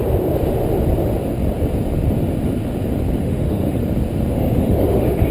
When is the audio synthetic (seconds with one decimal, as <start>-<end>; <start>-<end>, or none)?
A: 3.2-3.8; 4.3-5.3

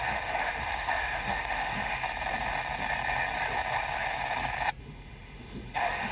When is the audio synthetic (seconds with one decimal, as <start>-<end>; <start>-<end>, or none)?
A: 0.0-2.0; 4.8-6.1

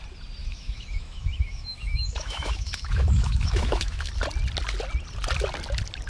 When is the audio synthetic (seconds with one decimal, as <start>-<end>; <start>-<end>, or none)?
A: 0.4-4.1

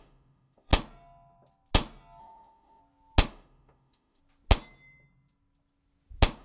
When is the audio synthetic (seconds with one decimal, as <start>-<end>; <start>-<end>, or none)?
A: 0.0-0.7; 2.2-2.8; 3.3-4.2

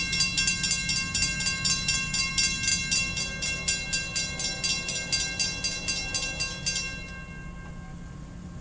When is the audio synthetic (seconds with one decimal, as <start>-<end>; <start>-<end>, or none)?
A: none

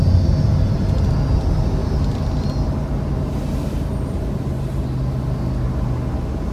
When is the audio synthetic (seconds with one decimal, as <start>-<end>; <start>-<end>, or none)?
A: none